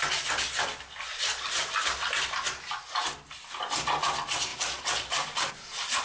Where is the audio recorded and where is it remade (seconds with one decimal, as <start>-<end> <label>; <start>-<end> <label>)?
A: 0.0-1.1 recorded; 1.1-1.7 remade; 1.7-4.5 recorded; 4.5-5.5 remade; 5.5-6.0 recorded